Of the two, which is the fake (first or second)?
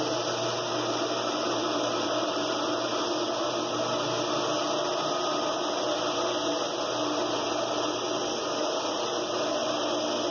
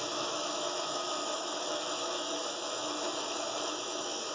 second